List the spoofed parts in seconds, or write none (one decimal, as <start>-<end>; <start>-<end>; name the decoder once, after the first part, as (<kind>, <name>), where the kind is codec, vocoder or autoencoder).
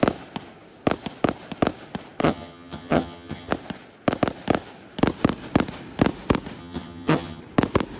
2.2-3.5 (vocoder, HiFi-GAN); 6.6-7.4